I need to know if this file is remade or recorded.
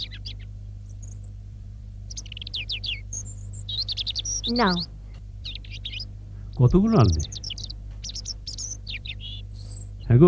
remade